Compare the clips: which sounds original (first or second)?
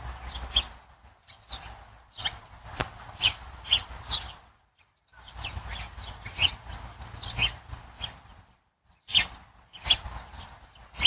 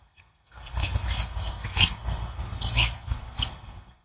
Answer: first